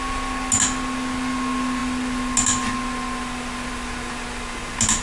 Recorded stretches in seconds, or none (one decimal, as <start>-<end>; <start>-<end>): 0.0-5.0